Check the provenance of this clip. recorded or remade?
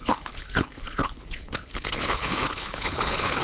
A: remade